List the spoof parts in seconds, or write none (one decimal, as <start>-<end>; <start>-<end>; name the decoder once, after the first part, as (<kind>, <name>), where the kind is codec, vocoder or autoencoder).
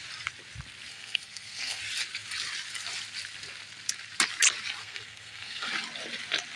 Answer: 0.9-1.8 (codec, SNAC); 4.8-5.7